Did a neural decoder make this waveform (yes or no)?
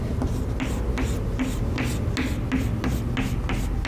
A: no